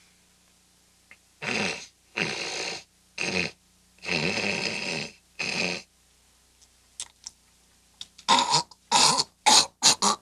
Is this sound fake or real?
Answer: real